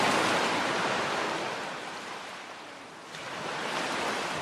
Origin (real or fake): real